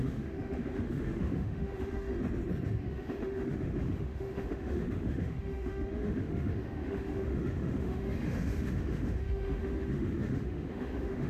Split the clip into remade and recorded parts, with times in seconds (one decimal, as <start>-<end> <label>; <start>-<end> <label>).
0.0-2.1 remade; 2.1-2.8 recorded; 2.8-11.3 remade